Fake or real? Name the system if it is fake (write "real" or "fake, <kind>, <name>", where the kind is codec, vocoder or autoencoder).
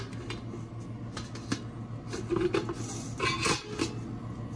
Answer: real